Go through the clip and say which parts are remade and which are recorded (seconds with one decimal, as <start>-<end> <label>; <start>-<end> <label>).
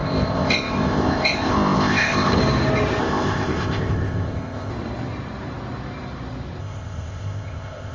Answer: 0.0-2.4 remade; 2.4-3.0 recorded; 3.0-4.7 remade; 4.7-6.6 recorded; 6.6-7.9 remade